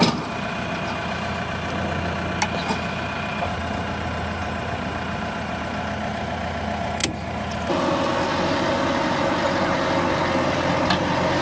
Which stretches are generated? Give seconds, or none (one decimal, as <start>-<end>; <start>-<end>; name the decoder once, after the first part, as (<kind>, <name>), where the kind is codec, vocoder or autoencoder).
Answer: none